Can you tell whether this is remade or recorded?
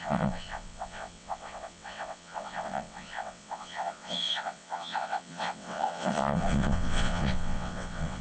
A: remade